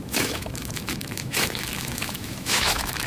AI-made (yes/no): yes